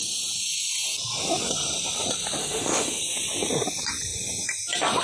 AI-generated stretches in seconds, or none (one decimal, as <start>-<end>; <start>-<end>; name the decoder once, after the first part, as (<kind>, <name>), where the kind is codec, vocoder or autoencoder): 2.4-3.0 (autoencoder, DAC-VAE)